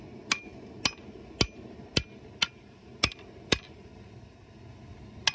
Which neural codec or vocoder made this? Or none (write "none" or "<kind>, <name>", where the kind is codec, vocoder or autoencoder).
none